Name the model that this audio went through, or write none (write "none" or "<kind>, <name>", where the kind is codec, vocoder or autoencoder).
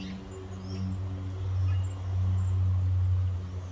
none